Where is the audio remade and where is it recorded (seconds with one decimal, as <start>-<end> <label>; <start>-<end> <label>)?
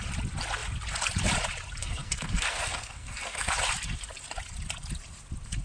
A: 0.0-1.8 recorded; 1.8-3.5 remade; 3.5-5.6 recorded